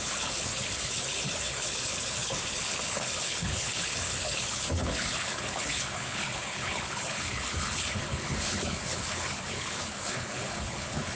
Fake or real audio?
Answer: fake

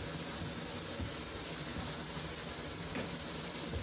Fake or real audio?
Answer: real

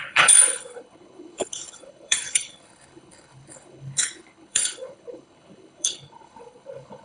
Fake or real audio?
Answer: fake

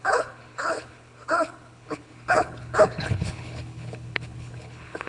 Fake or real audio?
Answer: fake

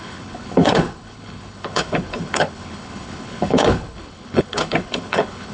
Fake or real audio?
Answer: fake